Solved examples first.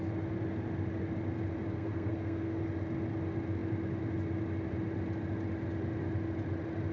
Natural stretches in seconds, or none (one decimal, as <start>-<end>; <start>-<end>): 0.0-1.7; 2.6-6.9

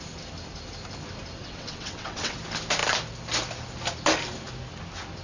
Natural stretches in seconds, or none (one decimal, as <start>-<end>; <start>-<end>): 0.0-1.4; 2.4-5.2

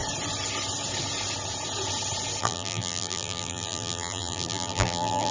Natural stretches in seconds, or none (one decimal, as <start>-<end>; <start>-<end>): 0.0-2.4

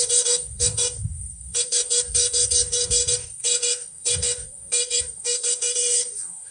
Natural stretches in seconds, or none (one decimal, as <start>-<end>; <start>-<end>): none